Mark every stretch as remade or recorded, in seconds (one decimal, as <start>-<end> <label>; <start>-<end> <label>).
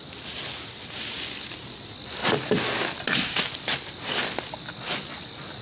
0.0-5.6 recorded